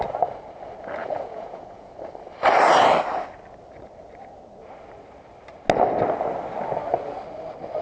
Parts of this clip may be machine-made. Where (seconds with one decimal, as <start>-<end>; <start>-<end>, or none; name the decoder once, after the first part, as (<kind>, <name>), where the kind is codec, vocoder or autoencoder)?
1.0-1.9 (vocoder, Vocos)